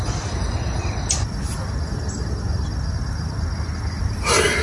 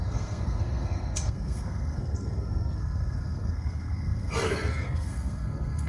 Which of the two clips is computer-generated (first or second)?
second